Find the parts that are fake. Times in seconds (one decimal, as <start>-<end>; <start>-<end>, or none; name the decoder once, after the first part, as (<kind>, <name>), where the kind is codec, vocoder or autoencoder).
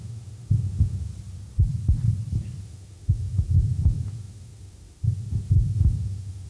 0.0-1.1 (autoencoder, DAC-VAE); 2.6-6.5